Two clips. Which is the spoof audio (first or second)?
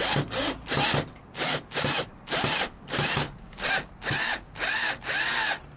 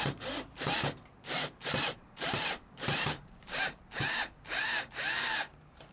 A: second